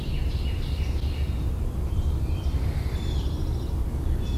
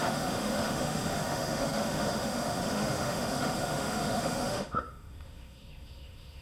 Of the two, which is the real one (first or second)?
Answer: first